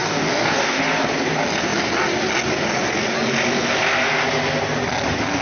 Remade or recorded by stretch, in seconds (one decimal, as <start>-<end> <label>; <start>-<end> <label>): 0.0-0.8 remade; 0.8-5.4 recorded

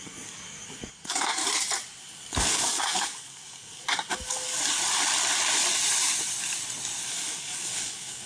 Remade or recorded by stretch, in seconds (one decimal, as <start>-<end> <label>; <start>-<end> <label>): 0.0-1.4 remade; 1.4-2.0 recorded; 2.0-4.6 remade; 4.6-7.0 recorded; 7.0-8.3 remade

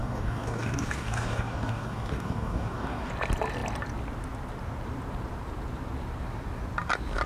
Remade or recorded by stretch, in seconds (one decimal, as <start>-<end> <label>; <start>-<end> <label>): 0.0-3.1 remade; 3.1-7.3 recorded

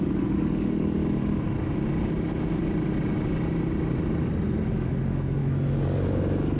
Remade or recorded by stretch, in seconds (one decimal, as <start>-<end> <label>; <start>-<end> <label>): 0.0-1.0 remade; 1.0-4.7 recorded; 4.7-5.4 remade; 5.4-6.6 recorded

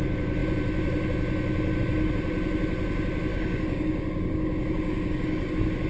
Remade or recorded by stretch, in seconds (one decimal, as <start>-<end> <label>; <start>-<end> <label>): 0.0-3.3 recorded; 3.3-5.5 remade; 5.5-5.9 recorded

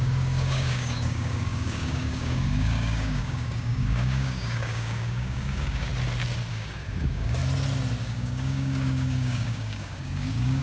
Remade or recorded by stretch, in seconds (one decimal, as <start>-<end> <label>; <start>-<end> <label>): 0.0-5.9 remade; 5.9-6.5 recorded; 6.5-7.4 remade; 7.4-8.0 recorded; 8.0-10.6 remade

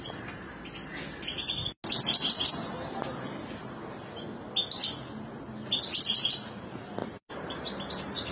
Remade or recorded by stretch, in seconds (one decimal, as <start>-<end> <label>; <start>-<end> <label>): 0.0-8.3 recorded

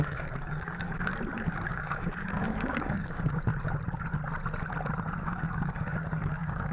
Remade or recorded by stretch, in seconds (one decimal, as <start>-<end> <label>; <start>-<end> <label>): 0.0-1.1 remade; 1.1-1.7 recorded; 1.7-3.5 remade; 3.5-5.1 recorded; 5.1-6.7 remade